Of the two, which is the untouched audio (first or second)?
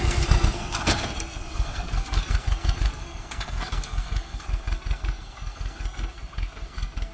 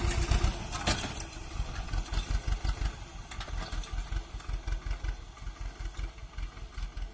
second